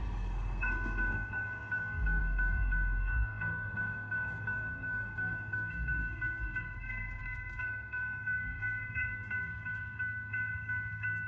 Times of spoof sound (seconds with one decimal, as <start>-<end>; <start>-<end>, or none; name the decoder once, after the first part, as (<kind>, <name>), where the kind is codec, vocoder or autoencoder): 0.0-11.3 (codec, SNAC)